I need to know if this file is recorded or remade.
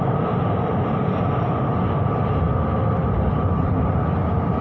recorded